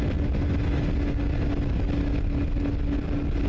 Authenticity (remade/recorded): recorded